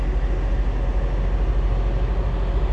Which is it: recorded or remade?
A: recorded